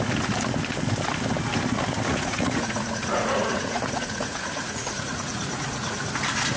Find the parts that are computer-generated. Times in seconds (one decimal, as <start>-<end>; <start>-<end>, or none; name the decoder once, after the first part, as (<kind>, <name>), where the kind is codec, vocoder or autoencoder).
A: 2.1-6.1 (vocoder, Vocos)